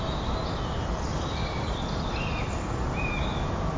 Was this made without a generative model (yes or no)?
yes